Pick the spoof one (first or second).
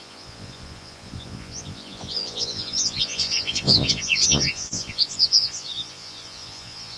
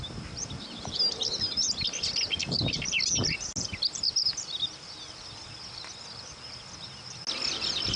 first